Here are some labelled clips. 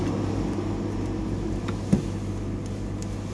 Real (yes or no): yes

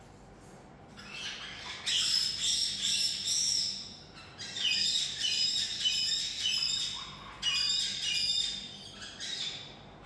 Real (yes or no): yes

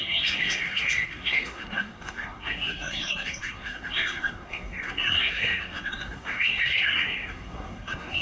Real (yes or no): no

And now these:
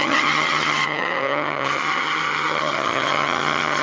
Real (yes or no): no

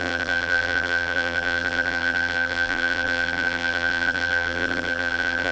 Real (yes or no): no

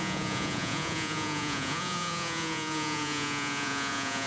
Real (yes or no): no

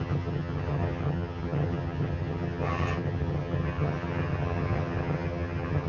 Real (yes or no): no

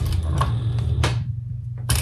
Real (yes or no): no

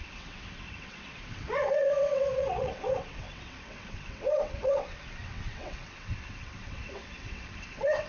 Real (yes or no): no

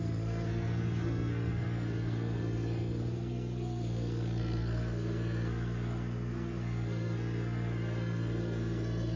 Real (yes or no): no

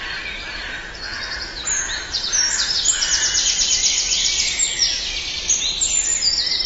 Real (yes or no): yes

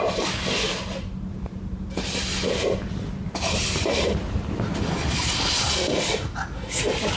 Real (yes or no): yes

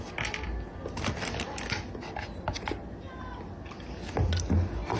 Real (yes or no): yes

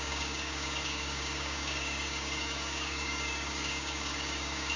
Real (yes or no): no